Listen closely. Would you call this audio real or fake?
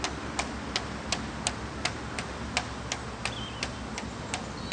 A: real